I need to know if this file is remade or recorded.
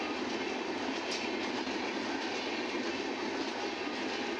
recorded